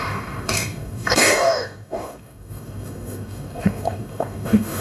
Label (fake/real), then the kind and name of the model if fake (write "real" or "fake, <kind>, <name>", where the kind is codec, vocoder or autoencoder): fake, codec, DAC